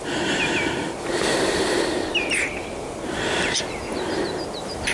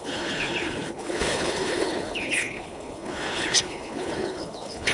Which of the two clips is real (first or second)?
first